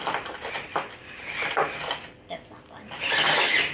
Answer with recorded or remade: recorded